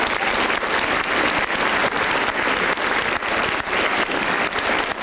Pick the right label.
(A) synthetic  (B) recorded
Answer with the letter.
B